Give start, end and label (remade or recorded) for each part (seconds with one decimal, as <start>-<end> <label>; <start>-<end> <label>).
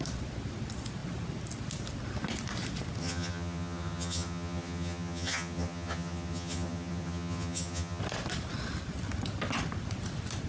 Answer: 0.0-3.0 recorded; 3.0-8.0 remade; 8.0-10.5 recorded